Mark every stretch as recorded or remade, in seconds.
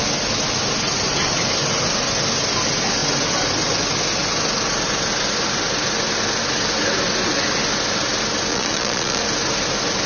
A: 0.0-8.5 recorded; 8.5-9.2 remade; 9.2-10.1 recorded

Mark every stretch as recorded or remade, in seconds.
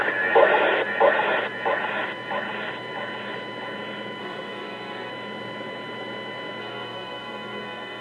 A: 0.0-4.2 recorded; 4.2-5.1 remade; 5.1-6.6 recorded; 6.6-8.0 remade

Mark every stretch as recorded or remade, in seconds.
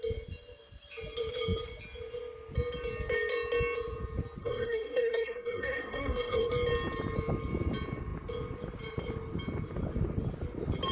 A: 0.0-4.4 recorded; 4.4-6.5 remade; 6.5-10.9 recorded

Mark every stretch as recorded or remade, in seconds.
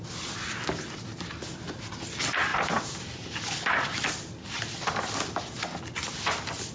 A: 0.0-6.7 recorded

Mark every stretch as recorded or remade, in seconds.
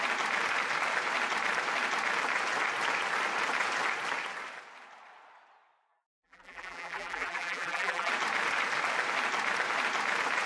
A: 0.0-5.9 recorded; 5.9-8.1 remade; 8.1-10.5 recorded